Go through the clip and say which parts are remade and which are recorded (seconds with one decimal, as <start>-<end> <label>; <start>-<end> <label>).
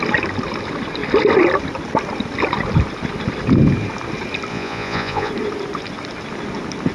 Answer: 0.0-4.5 recorded; 4.5-5.3 remade; 5.3-6.9 recorded